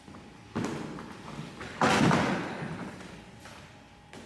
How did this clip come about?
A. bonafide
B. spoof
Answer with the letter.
A